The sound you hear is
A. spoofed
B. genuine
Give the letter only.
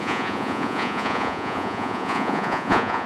A